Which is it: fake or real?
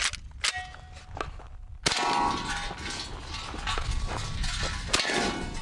real